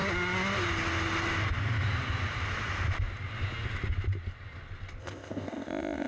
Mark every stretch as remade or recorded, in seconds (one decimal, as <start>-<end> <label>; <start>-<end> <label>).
0.0-5.0 recorded; 5.0-6.1 remade